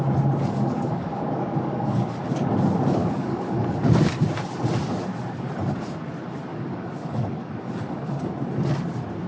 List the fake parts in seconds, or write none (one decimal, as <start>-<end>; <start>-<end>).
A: 0.4-2.5; 3.0-3.8; 6.5-8.3